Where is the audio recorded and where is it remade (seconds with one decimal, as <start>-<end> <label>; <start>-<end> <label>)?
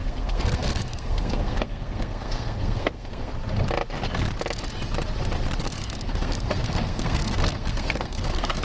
0.0-3.3 remade; 3.3-5.6 recorded; 5.6-8.6 remade